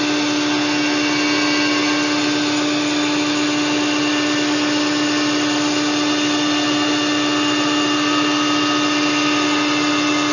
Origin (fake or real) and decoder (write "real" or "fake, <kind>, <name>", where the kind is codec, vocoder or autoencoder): real